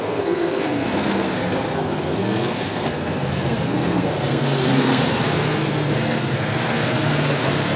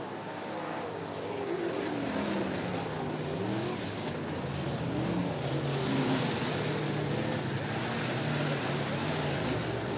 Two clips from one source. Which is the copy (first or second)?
first